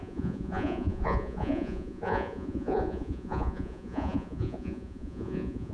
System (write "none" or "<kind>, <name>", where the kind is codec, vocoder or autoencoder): vocoder, Vocos